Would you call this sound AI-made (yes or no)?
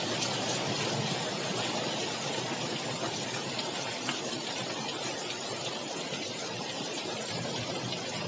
no